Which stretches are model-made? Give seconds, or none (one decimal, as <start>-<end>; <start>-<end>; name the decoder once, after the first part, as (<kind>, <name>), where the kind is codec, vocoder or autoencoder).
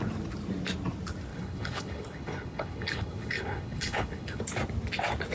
1.3-4.4 (codec, HILCodec)